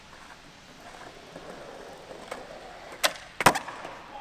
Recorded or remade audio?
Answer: recorded